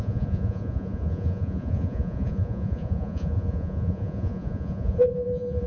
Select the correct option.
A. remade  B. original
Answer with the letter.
A